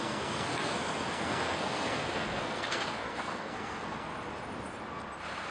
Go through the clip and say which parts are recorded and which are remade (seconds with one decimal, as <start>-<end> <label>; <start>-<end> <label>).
0.0-4.1 remade; 4.1-5.5 recorded